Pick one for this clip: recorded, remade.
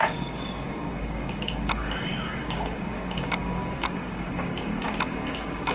remade